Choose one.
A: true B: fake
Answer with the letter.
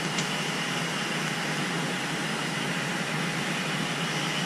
A